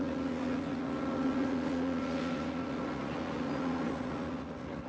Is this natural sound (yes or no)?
no